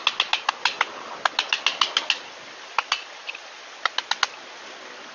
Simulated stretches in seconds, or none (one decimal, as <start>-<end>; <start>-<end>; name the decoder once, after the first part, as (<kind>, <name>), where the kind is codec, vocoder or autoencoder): none